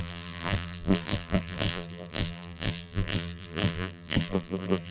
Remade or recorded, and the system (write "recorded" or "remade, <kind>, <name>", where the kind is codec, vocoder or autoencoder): remade, vocoder, BigVGAN v2